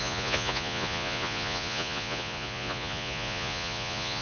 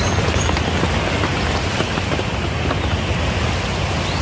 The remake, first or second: first